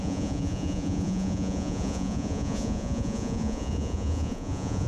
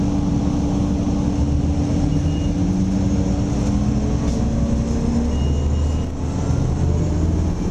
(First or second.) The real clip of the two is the second